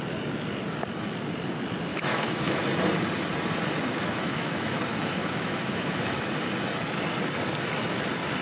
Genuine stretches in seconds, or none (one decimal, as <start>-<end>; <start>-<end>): 0.0-1.9; 2.6-3.9; 4.8-5.2; 6.3-8.4